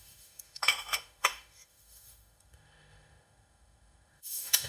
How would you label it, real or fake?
fake